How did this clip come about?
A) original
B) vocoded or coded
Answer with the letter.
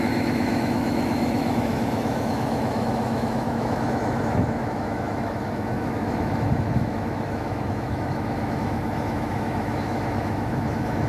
B